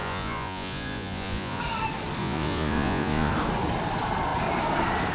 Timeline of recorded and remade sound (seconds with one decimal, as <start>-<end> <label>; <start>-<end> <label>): 0.0-1.6 remade; 1.6-2.2 recorded; 2.2-3.3 remade; 3.3-5.1 recorded